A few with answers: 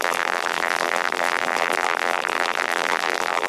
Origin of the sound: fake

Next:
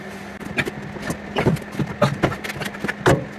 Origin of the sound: real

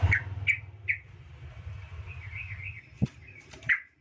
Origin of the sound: fake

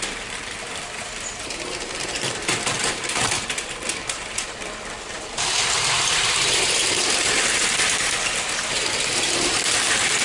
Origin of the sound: fake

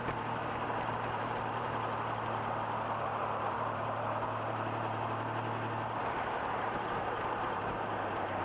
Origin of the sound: fake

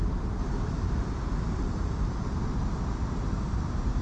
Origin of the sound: fake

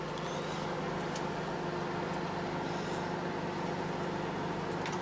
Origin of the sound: real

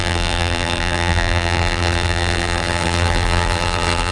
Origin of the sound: fake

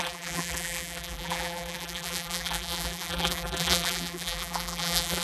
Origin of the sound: fake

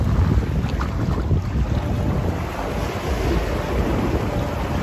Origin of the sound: real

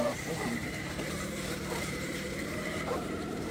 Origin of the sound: fake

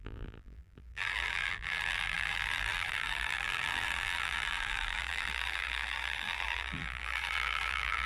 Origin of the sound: fake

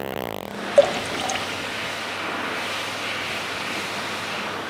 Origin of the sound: real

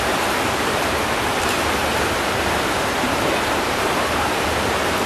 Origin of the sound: fake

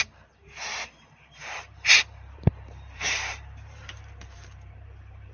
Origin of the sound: fake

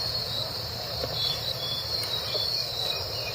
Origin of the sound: fake